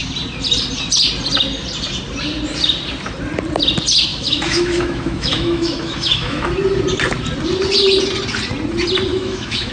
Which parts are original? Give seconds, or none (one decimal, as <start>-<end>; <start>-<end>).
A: 0.0-4.1; 6.5-9.1